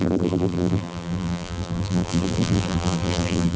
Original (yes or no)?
no